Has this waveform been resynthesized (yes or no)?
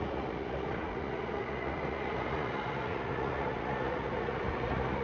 yes